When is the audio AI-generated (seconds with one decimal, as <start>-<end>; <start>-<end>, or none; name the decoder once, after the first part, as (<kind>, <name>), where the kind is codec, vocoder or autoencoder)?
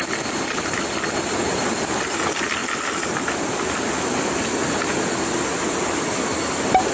none